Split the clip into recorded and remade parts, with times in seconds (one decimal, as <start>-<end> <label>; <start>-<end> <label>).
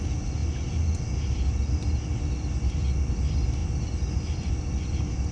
0.0-5.3 recorded